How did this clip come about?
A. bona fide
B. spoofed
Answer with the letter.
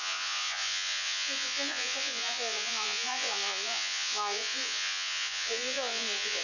B